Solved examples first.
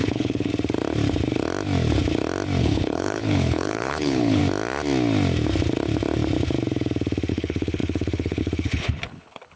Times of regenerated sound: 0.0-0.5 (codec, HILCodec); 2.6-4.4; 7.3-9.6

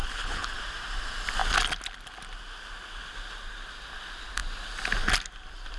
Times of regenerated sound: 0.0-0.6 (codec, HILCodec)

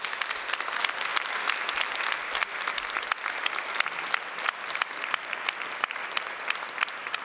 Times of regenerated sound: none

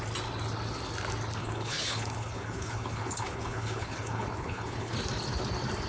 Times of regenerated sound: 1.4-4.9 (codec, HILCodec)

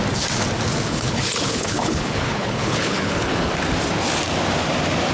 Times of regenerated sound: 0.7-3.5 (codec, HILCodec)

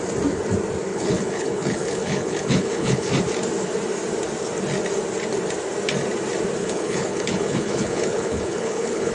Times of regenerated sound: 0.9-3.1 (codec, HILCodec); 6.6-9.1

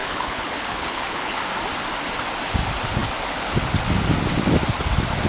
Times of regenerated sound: 0.0-1.4 (codec, HILCodec)